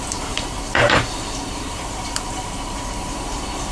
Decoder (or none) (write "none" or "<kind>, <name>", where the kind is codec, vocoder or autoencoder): vocoder, BigVGAN v2